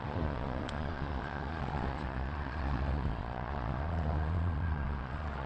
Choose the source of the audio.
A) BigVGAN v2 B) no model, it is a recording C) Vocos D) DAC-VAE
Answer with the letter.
C